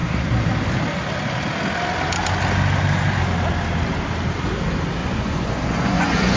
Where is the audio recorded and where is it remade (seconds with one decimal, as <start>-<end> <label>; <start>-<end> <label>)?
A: 0.0-5.0 recorded; 5.0-6.4 remade